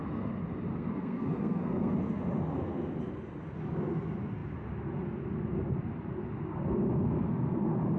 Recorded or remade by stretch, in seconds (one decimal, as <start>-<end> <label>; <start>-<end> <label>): 0.0-0.7 recorded; 0.7-1.9 remade; 1.9-8.0 recorded